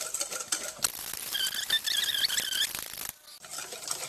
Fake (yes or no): no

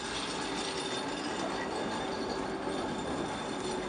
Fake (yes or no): no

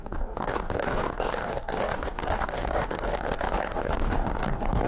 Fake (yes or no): yes